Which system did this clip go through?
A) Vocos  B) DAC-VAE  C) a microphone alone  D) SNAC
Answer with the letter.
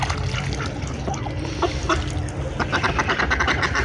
C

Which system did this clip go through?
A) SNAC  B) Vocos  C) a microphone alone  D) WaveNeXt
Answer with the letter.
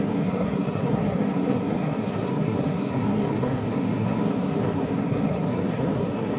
A